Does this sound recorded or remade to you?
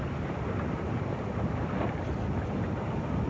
recorded